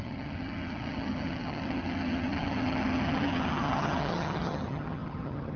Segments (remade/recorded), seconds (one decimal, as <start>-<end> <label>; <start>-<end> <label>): 0.0-5.6 remade